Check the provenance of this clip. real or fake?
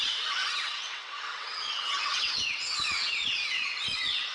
fake